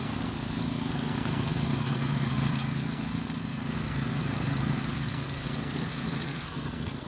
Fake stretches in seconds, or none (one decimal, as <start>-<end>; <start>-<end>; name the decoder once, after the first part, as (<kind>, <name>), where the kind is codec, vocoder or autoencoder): 0.0-7.1 (codec, SNAC)